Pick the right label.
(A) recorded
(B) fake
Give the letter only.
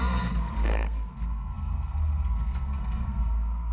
B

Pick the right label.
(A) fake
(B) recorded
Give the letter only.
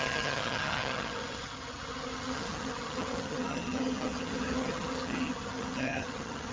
A